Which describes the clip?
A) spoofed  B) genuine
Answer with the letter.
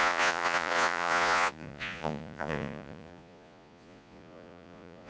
A